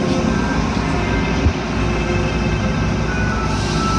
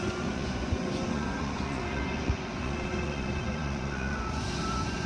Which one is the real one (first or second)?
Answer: first